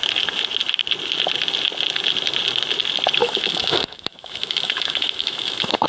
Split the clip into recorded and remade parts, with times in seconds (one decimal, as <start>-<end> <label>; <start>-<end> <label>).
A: 0.0-3.2 recorded; 3.2-5.9 remade